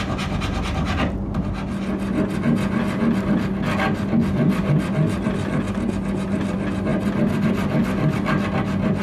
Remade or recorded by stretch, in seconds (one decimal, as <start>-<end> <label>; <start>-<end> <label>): 0.0-9.0 recorded